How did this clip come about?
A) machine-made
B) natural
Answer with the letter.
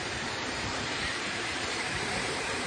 A